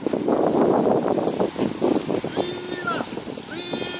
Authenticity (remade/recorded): recorded